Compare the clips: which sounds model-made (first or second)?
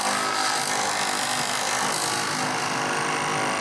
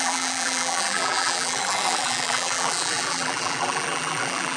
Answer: second